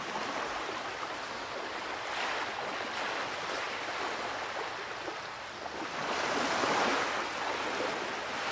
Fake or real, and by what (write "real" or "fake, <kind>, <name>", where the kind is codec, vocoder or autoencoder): real